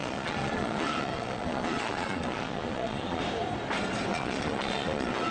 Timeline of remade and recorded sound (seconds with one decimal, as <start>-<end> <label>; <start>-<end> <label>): 0.0-3.2 remade; 3.2-4.1 recorded; 4.1-5.3 remade